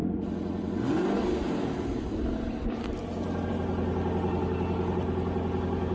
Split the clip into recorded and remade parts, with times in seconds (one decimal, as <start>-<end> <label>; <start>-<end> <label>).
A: 0.0-5.9 recorded